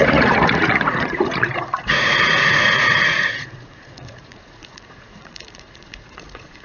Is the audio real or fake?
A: fake